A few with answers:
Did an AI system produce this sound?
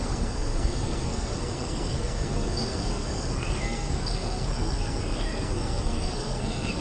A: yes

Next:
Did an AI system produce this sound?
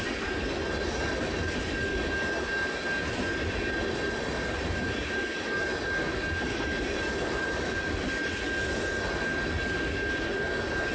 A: no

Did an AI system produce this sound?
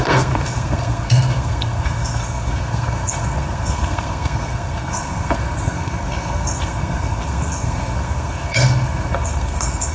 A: yes